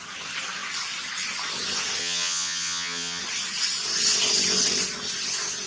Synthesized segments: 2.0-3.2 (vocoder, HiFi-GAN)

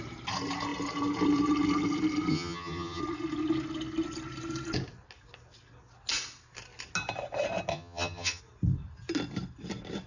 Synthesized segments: 2.3-3.0 (vocoder, HiFi-GAN); 7.7-8.4

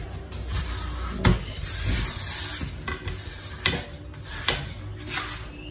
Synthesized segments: none

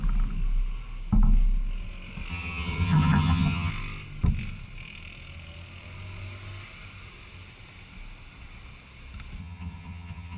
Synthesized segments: 2.3-3.7 (vocoder, HiFi-GAN); 9.4-10.4

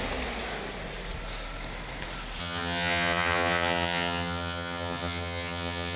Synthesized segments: 2.4-6.0 (vocoder, HiFi-GAN)

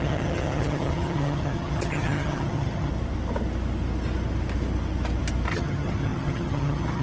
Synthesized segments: 0.0-2.9 (vocoder, HiFi-GAN); 5.5-7.0